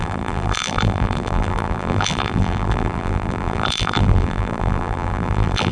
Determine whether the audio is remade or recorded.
remade